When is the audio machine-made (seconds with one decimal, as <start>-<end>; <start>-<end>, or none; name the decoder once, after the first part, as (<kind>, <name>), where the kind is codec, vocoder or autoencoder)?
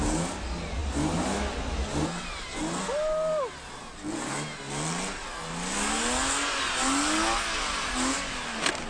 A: none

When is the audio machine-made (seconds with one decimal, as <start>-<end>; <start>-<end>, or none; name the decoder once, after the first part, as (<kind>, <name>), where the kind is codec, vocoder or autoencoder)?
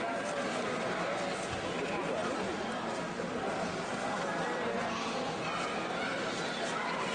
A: none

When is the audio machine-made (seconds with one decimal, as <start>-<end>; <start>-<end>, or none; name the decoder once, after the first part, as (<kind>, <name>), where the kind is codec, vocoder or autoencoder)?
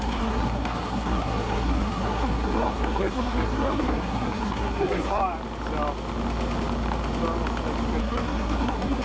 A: 0.0-5.2 (codec, SNAC); 8.0-9.0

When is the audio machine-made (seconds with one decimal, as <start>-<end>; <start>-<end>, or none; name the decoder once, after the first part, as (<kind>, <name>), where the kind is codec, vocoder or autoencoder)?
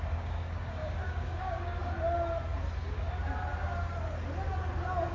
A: 0.0-1.8 (codec, DAC)